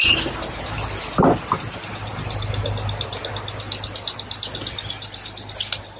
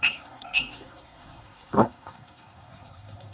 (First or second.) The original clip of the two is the first